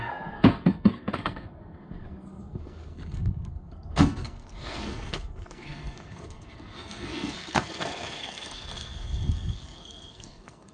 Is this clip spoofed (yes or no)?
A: yes